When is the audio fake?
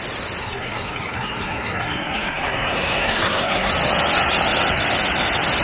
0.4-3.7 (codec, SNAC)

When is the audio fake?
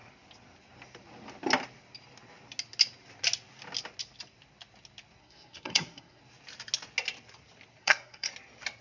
5.2-6.2 (codec, SNAC); 7.8-8.3